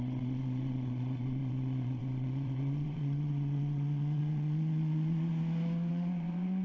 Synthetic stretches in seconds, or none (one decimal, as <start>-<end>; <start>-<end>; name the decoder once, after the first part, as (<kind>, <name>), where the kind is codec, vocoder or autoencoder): 0.0-5.3 (vocoder, Vocos); 5.9-6.6